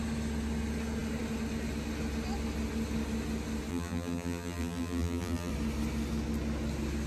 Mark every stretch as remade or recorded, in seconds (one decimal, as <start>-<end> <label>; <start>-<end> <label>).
0.0-3.7 recorded; 3.7-5.5 remade; 5.5-7.1 recorded